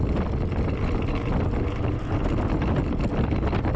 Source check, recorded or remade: recorded